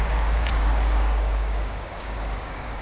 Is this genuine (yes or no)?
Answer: no